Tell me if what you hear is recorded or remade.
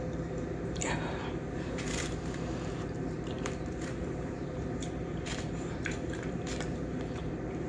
remade